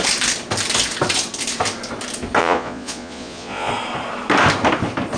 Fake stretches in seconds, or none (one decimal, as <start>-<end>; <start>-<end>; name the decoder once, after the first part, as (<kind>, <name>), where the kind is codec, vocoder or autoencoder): 2.4-3.7 (vocoder, Vocos)